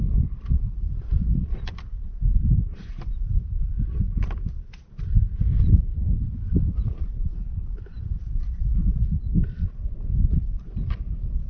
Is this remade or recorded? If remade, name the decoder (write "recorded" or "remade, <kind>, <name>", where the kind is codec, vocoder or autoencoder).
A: remade, vocoder, BigVGAN v2